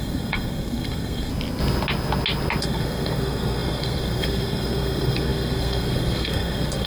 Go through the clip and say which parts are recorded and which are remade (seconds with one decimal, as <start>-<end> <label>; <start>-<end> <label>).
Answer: 0.0-1.3 remade; 1.3-2.6 recorded; 2.6-6.9 remade